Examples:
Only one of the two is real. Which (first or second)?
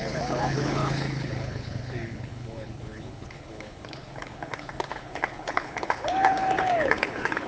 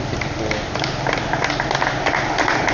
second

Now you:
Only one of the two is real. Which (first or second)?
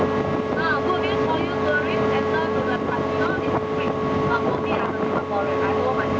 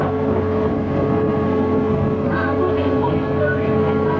first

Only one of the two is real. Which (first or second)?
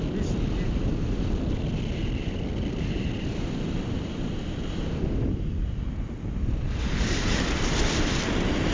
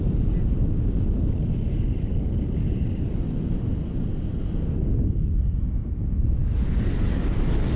second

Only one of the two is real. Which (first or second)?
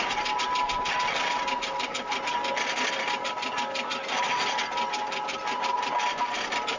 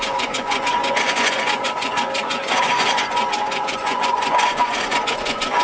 first